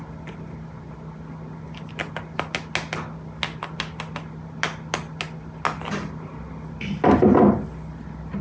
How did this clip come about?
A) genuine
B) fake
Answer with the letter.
A